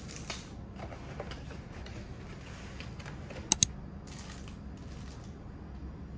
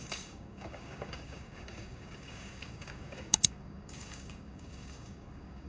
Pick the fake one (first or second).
second